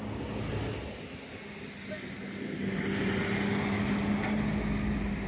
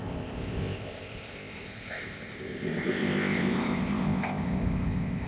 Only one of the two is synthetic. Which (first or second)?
second